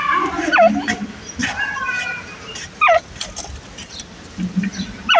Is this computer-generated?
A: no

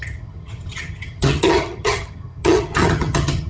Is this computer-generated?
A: yes